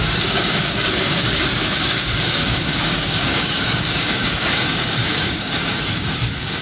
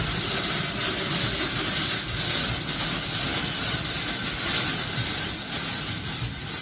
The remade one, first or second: first